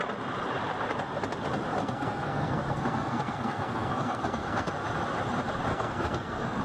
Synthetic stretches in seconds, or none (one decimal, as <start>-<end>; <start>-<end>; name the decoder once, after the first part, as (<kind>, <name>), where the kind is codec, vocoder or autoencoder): 1.8-4.7 (codec, SNAC); 5.7-6.6